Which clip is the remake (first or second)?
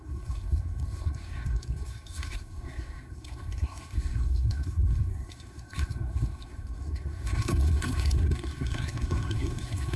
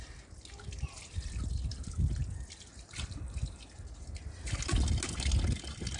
first